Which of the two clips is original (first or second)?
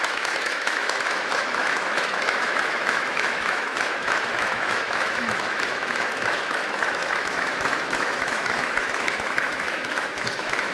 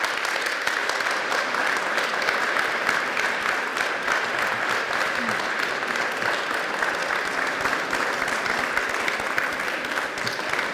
second